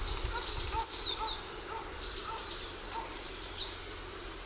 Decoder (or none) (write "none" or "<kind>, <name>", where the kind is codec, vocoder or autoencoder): none